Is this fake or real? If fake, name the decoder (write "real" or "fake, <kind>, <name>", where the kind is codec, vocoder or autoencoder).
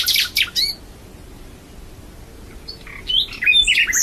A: real